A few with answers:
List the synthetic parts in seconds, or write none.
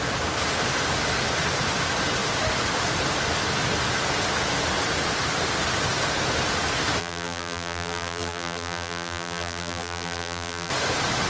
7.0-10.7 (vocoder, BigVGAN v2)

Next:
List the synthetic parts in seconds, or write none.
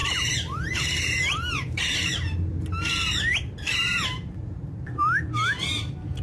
0.0-1.8 (vocoder, BigVGAN v2)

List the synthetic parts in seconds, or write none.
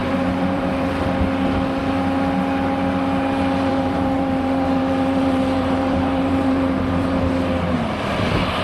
0.0-1.0 (vocoder, BigVGAN v2); 3.7-7.2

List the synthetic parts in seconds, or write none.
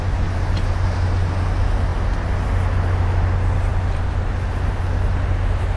3.7-4.3 (vocoder, BigVGAN v2)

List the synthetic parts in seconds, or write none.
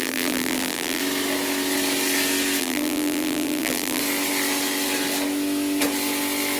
0.0-1.0 (vocoder, BigVGAN v2); 2.6-4.0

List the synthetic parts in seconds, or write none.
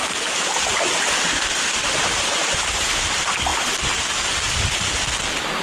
none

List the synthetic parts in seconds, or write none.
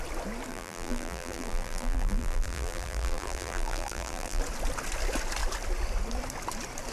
0.5-4.4 (vocoder, BigVGAN v2)